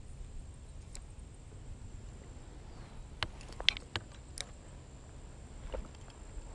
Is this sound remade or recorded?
recorded